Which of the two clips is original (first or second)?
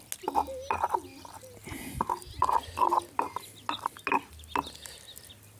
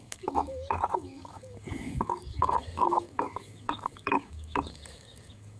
first